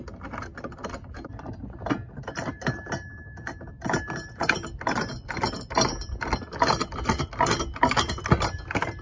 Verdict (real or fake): real